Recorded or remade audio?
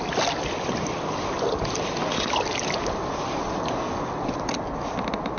recorded